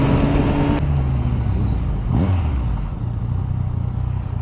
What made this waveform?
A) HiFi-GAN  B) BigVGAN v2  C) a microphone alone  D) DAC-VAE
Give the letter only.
C